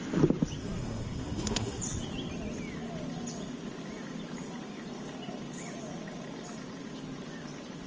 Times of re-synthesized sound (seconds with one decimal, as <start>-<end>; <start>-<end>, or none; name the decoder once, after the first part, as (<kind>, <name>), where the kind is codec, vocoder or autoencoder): 0.6-1.8 (codec, SNAC)